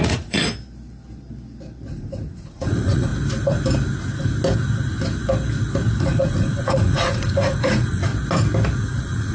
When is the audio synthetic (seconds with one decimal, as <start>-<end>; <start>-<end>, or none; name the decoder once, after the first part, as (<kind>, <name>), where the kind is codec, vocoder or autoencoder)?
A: 0.0-0.4 (vocoder, Vocos); 1.9-3.1; 6.0-8.1; 8.8-9.3